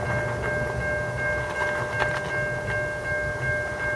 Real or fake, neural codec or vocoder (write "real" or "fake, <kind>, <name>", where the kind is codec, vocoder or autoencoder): real